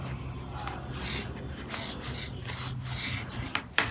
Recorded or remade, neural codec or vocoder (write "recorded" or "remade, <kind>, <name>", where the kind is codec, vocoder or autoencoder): recorded